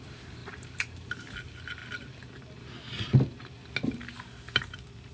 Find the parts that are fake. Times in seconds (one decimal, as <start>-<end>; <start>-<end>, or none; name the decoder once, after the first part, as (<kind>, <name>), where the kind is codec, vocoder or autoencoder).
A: 0.4-1.3 (vocoder, BigVGAN v2)

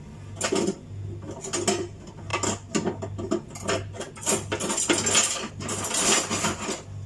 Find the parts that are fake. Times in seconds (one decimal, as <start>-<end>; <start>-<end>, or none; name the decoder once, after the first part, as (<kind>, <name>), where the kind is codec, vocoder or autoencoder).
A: none

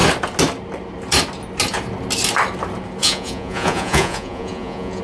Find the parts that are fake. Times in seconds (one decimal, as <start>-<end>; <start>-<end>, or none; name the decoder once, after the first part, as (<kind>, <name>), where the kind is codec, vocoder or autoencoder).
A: 3.0-5.0 (vocoder, Vocos)

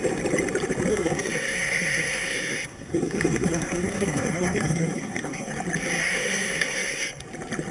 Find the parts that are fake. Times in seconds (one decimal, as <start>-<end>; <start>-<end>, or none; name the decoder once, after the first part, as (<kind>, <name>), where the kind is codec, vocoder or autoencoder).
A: 0.9-5.5 (codec, SNAC); 6.0-7.2

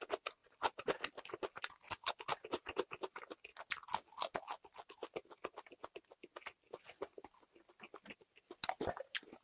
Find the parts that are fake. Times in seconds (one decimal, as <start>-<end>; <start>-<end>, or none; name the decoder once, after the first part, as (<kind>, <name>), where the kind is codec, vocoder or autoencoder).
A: none

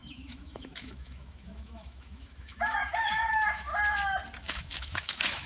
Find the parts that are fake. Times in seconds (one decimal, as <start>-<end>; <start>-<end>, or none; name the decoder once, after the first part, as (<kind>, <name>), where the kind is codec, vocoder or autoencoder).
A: 0.0-3.7 (autoencoder, DAC-VAE); 4.4-5.5

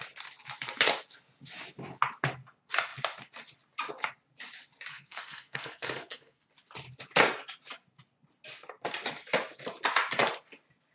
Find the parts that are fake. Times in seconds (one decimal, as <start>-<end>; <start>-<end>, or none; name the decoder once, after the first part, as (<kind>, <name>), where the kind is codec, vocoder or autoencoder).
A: 4.9-6.5 (codec, SNAC)